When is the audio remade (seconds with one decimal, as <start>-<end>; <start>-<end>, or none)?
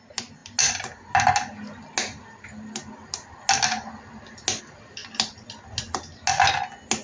none